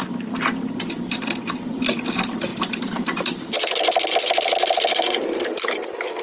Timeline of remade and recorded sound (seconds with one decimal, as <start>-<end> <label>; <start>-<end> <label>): 0.0-1.4 recorded; 1.4-6.2 remade

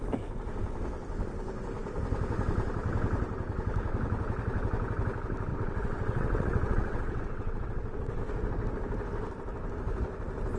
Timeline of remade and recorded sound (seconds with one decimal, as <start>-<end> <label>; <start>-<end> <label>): 0.0-5.5 recorded; 5.5-8.2 remade; 8.2-10.6 recorded

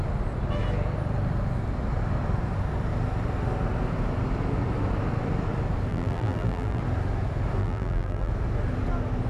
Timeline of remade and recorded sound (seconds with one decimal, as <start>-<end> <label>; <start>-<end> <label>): 0.0-5.9 recorded; 5.9-6.8 remade; 6.8-7.6 recorded; 7.6-8.3 remade; 8.3-9.3 recorded

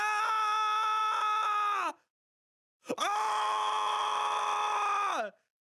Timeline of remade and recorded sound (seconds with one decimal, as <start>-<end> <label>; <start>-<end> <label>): 0.0-5.7 recorded

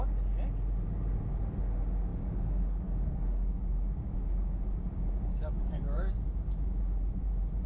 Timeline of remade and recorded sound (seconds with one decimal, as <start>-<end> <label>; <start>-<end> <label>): 0.0-2.1 recorded; 2.1-3.6 remade; 3.6-5.3 recorded; 5.3-6.1 remade; 6.1-7.7 recorded